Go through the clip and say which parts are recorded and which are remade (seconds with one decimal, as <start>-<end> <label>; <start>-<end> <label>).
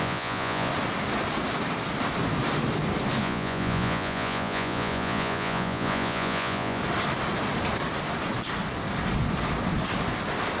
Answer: 0.0-0.7 remade; 0.7-3.2 recorded; 3.2-6.8 remade; 6.8-10.6 recorded